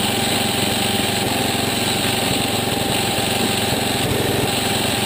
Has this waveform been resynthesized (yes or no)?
no